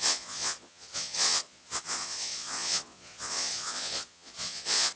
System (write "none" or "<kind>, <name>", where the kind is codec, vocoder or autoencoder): vocoder, Vocos